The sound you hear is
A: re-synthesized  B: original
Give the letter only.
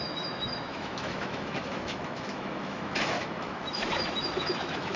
A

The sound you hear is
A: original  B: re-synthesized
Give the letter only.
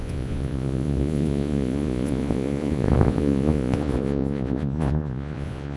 B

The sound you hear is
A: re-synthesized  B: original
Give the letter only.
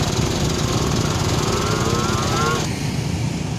B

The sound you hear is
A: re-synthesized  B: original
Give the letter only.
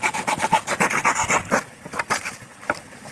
B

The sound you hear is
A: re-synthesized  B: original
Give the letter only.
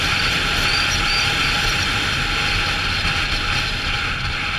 B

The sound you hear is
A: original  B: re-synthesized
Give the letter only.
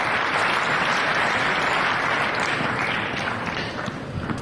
A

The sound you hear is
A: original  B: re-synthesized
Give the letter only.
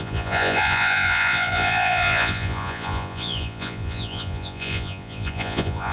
B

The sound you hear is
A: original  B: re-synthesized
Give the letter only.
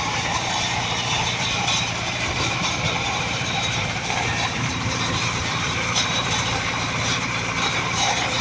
B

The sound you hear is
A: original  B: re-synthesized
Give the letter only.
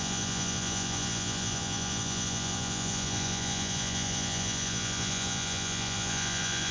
B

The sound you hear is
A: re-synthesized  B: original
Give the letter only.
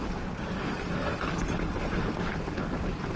B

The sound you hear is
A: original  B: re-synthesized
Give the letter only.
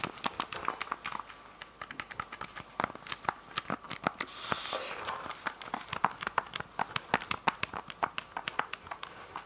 A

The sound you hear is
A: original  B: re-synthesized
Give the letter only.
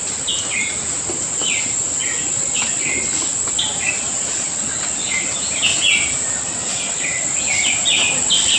A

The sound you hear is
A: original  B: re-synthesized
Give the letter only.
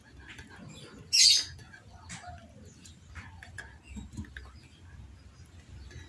A